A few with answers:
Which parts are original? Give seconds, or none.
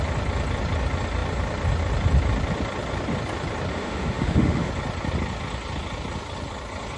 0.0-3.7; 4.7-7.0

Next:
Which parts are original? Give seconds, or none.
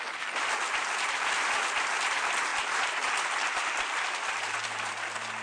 0.0-5.4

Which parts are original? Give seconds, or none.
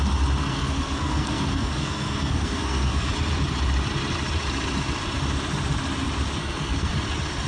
0.0-0.4; 3.1-6.4; 6.9-7.5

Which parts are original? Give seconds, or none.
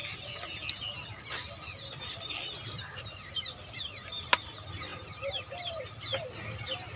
0.0-7.0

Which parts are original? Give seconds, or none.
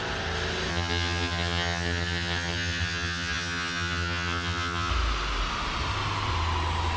0.0-0.7; 4.9-7.0